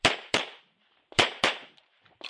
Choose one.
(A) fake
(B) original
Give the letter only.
A